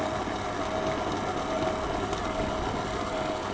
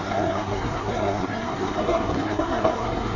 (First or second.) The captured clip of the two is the first